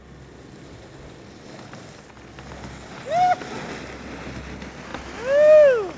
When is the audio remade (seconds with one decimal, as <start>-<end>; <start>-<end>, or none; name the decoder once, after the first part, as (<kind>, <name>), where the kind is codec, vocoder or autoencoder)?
none